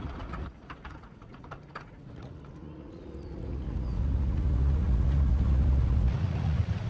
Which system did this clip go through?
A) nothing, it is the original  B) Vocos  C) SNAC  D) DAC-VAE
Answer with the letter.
B